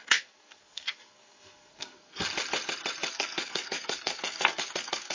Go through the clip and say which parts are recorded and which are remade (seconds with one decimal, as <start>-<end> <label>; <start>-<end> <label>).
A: 0.0-2.2 remade; 2.2-3.1 recorded; 3.1-5.1 remade